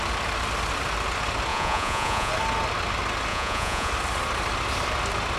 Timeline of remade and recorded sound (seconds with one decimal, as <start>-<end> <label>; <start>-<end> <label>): 0.0-1.5 recorded; 1.5-2.3 remade; 2.3-3.3 recorded; 3.3-3.9 remade; 3.9-5.4 recorded